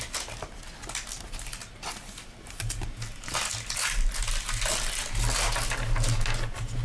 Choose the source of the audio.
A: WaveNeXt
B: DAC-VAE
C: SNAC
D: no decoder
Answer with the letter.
D